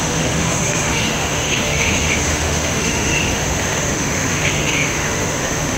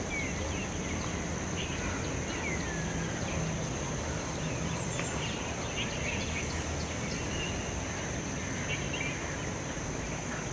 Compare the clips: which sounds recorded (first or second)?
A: second